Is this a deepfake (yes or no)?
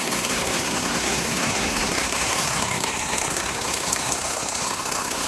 yes